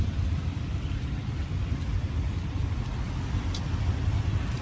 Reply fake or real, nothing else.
fake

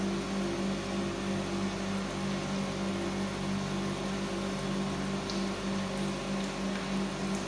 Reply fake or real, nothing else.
real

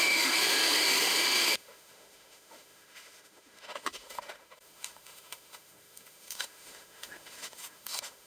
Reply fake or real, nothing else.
fake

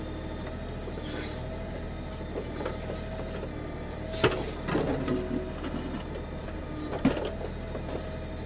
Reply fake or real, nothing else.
real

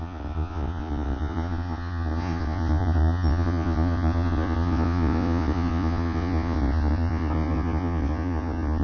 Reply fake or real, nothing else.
fake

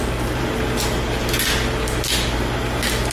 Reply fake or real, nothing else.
real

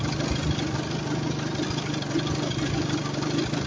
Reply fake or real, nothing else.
real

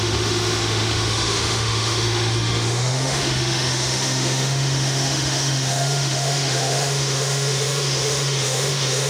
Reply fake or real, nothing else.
fake